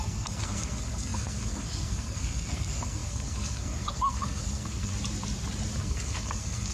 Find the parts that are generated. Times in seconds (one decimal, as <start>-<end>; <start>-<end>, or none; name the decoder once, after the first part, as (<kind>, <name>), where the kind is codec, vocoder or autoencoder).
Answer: 0.0-4.9 (codec, SNAC); 5.8-6.7